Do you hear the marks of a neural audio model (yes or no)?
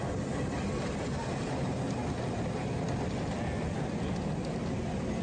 no